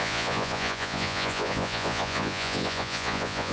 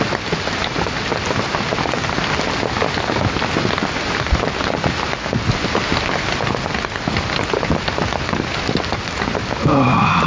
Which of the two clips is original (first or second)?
second